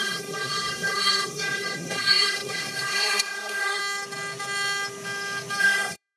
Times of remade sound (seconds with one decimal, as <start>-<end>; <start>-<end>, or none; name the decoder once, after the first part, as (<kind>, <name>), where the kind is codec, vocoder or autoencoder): 0.0-3.8 (codec, SNAC); 5.6-6.2

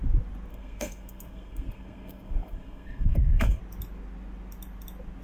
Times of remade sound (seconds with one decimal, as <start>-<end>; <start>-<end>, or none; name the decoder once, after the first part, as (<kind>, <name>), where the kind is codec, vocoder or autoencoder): 0.5-3.6 (codec, SNAC)